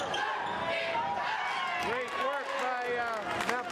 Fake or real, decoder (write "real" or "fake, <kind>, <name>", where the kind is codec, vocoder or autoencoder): real